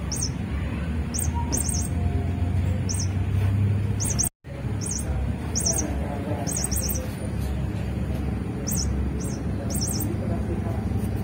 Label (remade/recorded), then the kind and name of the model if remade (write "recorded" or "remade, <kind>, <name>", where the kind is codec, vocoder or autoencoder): recorded